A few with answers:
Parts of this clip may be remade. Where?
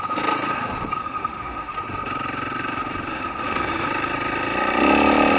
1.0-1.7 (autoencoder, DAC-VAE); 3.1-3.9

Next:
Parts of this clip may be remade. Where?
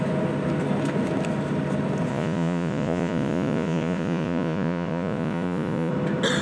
2.1-5.9 (vocoder, Vocos)